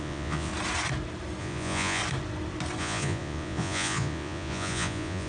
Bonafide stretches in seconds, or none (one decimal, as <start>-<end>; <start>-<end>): 0.5-1.4; 2.0-2.8